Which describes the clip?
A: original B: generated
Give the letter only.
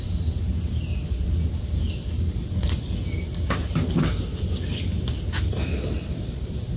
A